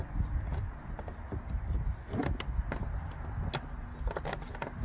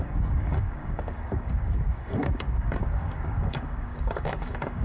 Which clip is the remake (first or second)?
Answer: second